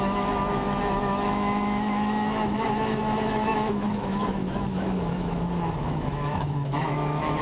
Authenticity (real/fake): fake